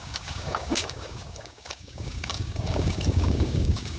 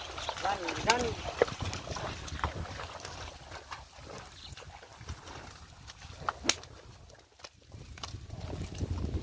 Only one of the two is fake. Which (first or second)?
first